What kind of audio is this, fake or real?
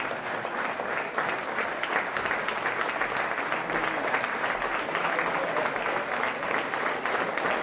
real